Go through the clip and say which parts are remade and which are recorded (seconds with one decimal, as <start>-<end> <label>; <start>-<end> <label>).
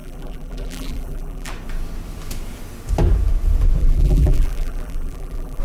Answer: 0.0-1.5 remade; 1.5-3.8 recorded; 3.8-5.6 remade